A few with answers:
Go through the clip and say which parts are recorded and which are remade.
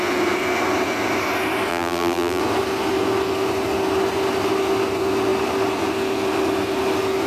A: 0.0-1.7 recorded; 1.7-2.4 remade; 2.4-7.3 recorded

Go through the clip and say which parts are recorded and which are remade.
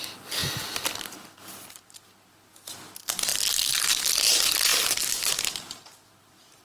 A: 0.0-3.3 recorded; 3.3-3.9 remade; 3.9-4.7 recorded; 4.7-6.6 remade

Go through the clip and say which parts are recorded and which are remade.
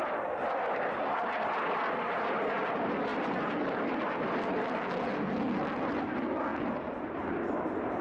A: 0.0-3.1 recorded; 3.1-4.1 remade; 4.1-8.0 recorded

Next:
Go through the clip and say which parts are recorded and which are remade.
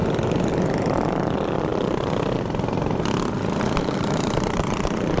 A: 0.0-0.5 recorded; 0.5-1.7 remade; 1.7-3.8 recorded; 3.8-5.2 remade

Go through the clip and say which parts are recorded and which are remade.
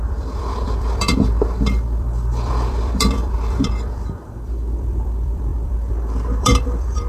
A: 0.0-7.1 remade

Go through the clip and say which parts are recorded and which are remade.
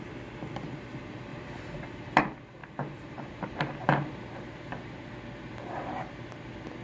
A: 0.0-1.3 recorded; 1.3-2.2 remade; 2.2-2.6 recorded; 2.6-5.2 remade; 5.2-6.8 recorded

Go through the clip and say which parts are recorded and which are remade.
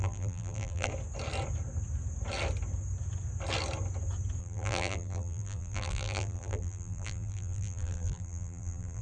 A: 0.0-0.9 remade; 0.9-4.4 recorded; 4.4-9.0 remade